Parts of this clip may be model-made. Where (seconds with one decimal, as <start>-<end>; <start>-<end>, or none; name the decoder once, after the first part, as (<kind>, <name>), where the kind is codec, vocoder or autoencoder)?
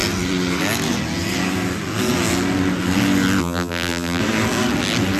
3.4-4.2 (vocoder, BigVGAN v2)